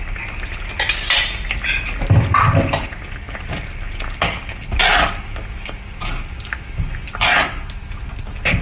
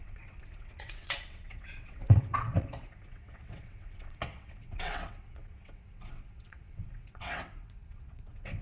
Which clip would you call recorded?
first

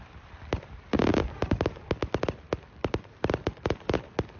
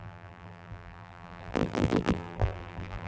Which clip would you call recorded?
first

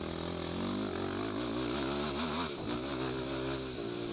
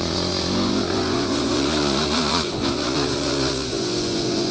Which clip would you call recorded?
first